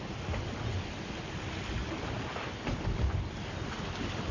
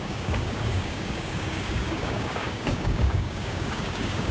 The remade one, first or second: second